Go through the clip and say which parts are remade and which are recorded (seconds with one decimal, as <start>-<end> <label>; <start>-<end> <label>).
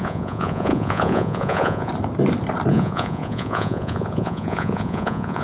0.0-1.9 remade; 1.9-2.7 recorded; 2.7-5.4 remade